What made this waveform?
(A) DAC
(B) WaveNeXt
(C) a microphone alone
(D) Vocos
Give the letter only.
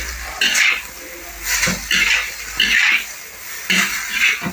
C